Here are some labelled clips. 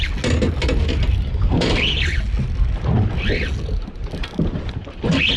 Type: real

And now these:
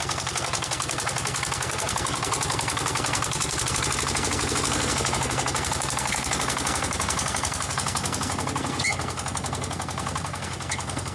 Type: fake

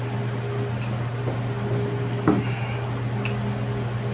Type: real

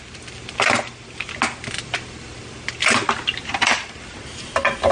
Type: real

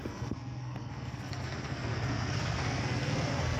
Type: fake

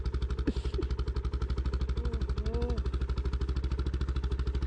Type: real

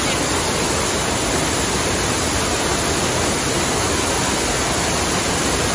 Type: real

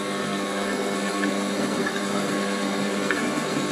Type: fake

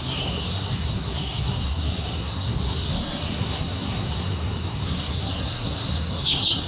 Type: fake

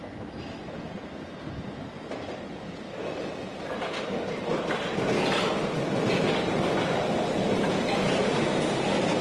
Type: real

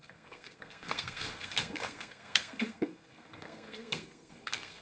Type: fake